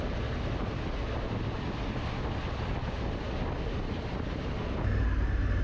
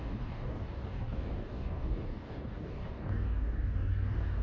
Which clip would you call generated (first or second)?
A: second